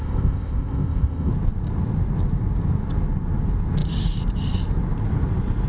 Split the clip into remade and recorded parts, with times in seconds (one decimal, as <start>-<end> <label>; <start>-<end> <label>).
0.0-1.3 remade; 1.3-5.7 recorded